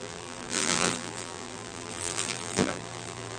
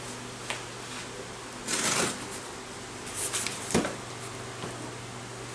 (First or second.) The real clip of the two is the second